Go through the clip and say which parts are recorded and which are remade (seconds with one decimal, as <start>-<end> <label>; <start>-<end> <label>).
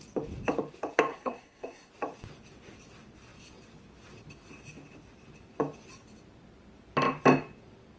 0.0-1.1 recorded; 1.1-1.9 remade; 1.9-8.0 recorded